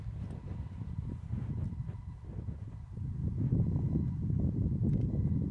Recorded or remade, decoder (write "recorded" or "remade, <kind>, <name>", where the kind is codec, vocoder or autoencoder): recorded